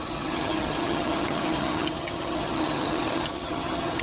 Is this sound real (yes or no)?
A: no